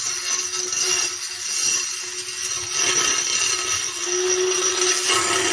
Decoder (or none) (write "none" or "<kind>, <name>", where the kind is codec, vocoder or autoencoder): none